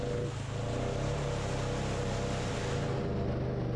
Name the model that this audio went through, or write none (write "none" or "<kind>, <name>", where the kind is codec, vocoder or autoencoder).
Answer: none